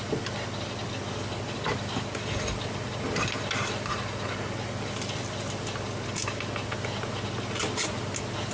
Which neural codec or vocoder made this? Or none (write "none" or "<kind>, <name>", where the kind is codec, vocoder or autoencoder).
none